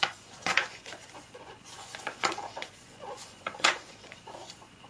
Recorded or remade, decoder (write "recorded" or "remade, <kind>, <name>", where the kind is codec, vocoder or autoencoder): remade, vocoder, Vocos